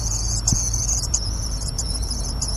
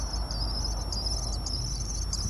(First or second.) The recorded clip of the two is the second